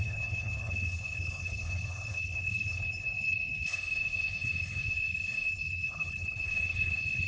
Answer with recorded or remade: remade